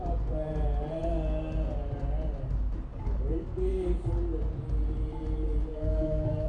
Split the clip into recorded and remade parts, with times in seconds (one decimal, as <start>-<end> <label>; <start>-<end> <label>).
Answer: 0.0-2.9 recorded; 2.9-4.1 remade; 4.1-5.7 recorded; 5.7-6.5 remade